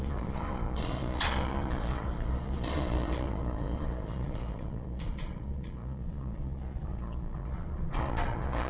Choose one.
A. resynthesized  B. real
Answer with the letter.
A